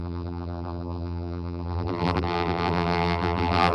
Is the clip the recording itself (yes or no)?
no